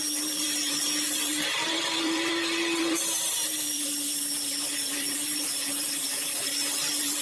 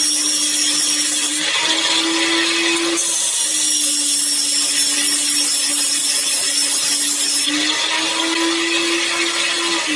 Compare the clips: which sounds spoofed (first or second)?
first